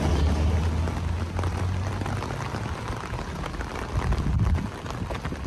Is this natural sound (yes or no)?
yes